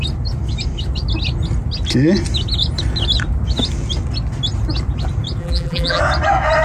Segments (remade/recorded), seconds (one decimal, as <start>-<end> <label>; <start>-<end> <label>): 0.0-5.4 recorded; 5.4-6.0 remade; 6.0-6.6 recorded